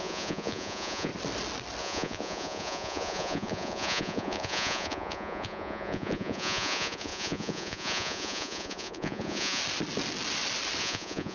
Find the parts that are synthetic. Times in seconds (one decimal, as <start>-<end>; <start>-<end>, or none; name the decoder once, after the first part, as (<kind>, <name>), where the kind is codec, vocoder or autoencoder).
0.0-1.1 (vocoder, Vocos); 1.8-9.6; 10.8-11.3